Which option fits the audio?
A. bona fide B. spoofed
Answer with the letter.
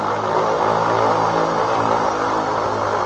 A